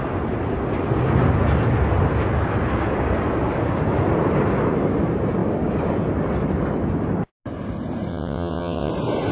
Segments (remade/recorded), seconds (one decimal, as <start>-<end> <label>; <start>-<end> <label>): 0.0-8.1 recorded; 8.1-8.9 remade; 8.9-9.3 recorded